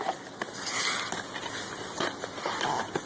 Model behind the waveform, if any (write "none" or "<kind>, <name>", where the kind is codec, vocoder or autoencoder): none